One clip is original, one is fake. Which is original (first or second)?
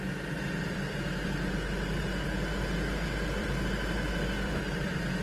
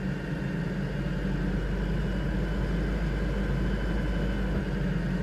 second